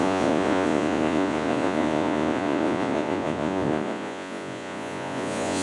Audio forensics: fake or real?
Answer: fake